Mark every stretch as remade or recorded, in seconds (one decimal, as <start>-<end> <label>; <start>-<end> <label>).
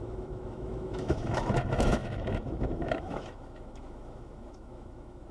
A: 0.0-5.3 remade